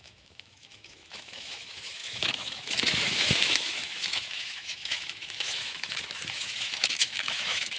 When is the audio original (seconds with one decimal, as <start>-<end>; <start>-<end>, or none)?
none